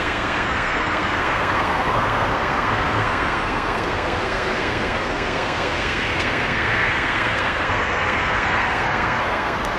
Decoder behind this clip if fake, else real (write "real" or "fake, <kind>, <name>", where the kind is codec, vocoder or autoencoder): fake, codec, SNAC